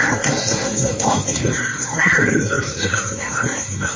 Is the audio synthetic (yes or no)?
yes